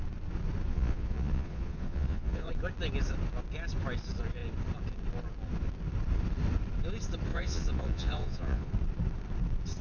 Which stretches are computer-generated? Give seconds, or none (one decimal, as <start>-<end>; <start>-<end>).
0.7-2.5; 7.3-8.7